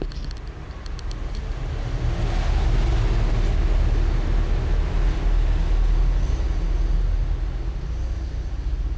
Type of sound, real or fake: real